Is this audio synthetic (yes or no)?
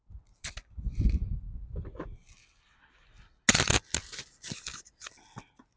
no